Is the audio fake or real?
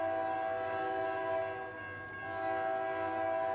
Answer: real